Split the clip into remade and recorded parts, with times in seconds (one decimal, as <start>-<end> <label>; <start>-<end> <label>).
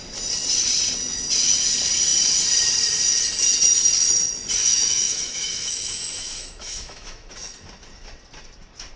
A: 0.0-4.6 recorded; 4.6-7.3 remade; 7.3-9.0 recorded